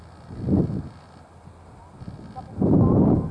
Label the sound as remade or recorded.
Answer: recorded